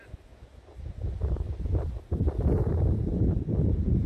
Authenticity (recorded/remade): recorded